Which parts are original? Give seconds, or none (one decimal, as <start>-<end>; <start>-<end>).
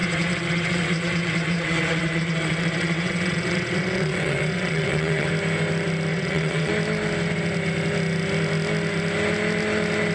5.3-6.1; 6.7-10.1